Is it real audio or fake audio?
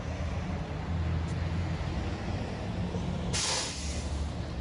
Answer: real